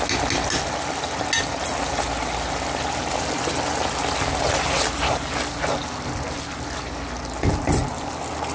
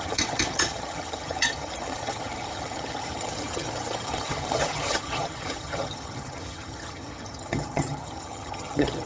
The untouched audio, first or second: first